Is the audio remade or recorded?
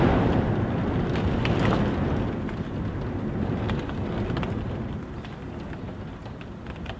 recorded